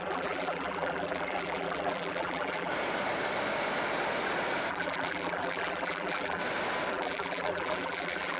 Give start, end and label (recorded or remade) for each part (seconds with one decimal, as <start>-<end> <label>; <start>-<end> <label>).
0.0-2.7 remade; 2.7-4.7 recorded; 4.7-6.4 remade; 6.4-6.9 recorded; 6.9-8.4 remade